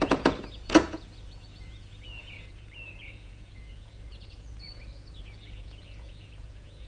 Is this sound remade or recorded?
remade